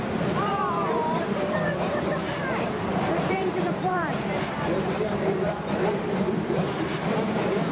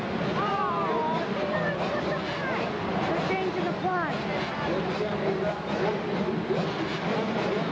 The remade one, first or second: first